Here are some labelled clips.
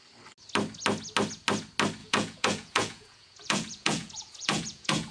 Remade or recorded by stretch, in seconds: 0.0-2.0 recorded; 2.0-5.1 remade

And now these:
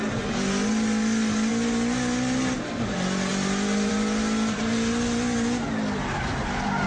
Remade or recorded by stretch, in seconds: 0.0-6.9 recorded

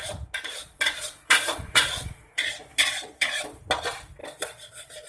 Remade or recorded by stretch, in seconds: 0.0-0.6 recorded; 0.6-3.6 remade; 3.6-4.2 recorded; 4.2-5.1 remade

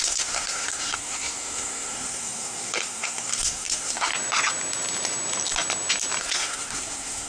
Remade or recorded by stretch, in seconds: 0.0-4.1 remade; 4.1-6.2 recorded; 6.2-7.3 remade